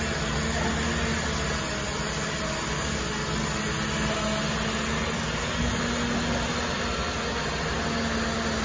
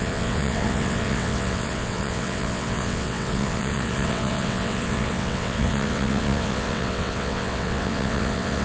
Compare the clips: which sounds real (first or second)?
first